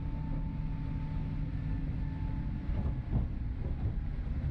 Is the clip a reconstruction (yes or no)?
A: no